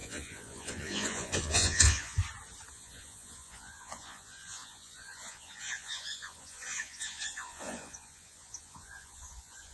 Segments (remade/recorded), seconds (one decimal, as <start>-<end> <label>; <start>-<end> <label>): 0.0-2.2 remade; 2.2-2.7 recorded; 2.7-9.7 remade